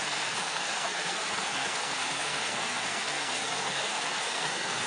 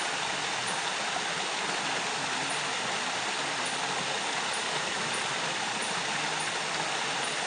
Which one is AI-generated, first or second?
first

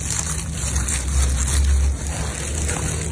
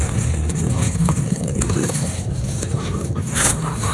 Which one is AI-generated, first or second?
second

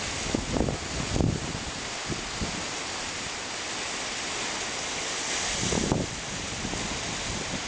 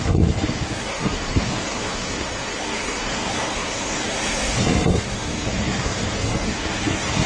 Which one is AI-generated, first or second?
second